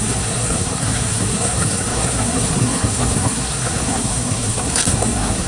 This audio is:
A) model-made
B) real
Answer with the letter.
A